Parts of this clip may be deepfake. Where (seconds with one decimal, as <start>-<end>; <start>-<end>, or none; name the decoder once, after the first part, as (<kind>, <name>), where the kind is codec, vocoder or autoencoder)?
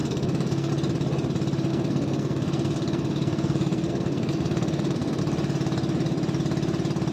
0.0-0.7 (codec, SNAC); 1.7-5.2